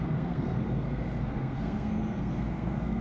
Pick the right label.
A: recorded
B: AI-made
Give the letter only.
B